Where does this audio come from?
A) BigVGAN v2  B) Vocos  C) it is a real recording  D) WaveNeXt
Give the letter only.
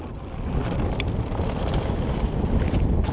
C